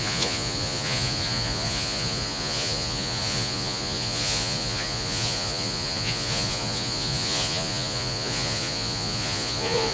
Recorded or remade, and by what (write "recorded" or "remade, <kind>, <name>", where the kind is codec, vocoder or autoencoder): remade, vocoder, Vocos